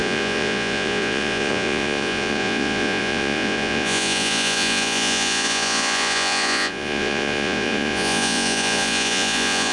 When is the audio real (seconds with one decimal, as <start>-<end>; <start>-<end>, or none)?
none